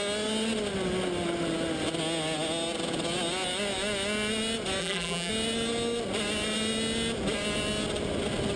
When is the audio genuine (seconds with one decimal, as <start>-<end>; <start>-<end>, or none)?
0.0-4.8; 5.3-8.6